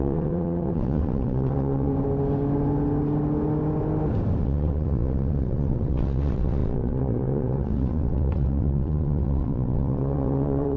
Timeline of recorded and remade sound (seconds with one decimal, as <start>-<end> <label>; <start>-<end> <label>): 0.0-1.9 remade; 1.9-4.4 recorded; 4.4-10.8 remade